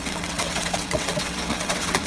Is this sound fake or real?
fake